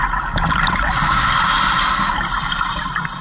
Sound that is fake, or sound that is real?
real